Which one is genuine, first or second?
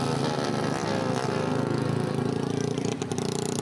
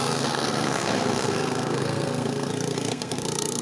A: first